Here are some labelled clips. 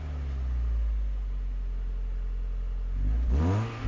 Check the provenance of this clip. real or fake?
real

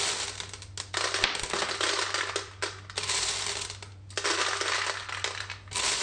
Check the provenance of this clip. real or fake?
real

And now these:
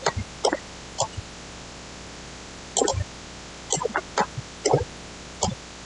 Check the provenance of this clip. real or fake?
real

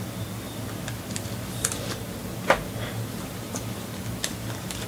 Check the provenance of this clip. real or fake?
fake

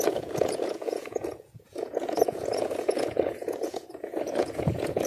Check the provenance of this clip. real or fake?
fake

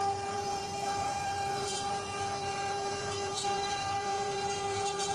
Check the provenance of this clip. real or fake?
fake